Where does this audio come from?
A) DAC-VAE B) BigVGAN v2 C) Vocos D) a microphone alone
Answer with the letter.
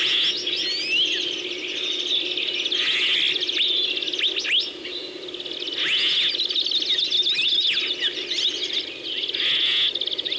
D